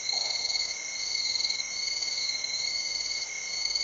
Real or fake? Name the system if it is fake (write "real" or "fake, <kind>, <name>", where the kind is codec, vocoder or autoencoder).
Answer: fake, autoencoder, DAC-VAE